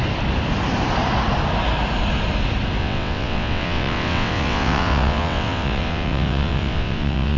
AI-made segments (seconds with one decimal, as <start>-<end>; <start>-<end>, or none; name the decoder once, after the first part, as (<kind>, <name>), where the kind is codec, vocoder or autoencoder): 2.8-7.4 (vocoder, WaveNeXt)